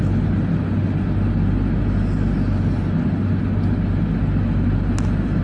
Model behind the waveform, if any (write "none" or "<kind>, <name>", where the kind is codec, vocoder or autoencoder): none